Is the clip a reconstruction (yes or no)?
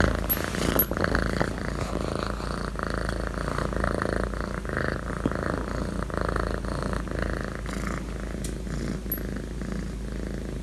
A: no